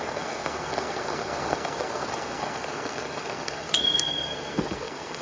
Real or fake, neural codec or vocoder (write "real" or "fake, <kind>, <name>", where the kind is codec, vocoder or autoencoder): fake, codec, SNAC